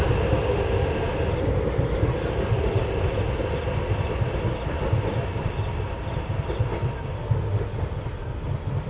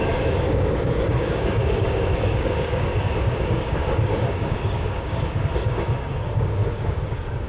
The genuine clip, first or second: first